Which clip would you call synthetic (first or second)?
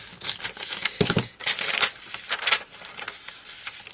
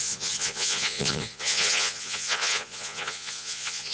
second